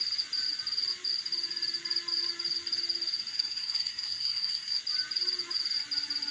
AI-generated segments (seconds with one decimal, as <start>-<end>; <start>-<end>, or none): 3.3-4.8